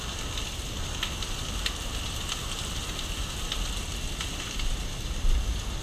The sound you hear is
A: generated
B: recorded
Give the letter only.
B